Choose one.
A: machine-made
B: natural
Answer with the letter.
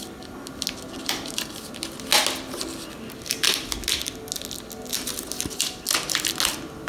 B